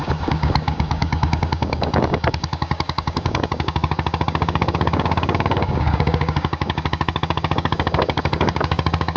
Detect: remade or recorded remade